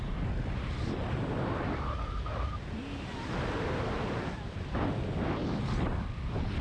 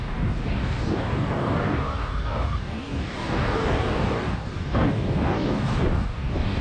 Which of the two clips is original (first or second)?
first